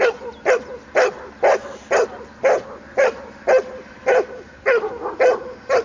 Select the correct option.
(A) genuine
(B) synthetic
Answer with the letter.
A